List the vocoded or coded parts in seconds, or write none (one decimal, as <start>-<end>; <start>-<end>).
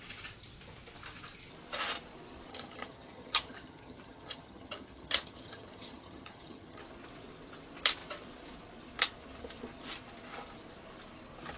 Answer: 2.5-6.8